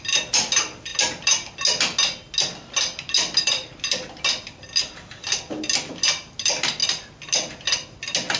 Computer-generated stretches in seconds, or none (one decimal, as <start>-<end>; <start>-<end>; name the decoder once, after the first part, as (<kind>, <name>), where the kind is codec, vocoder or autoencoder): none